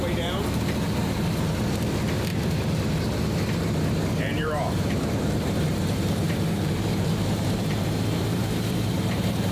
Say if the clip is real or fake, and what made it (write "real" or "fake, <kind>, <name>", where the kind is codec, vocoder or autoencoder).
fake, vocoder, BigVGAN v2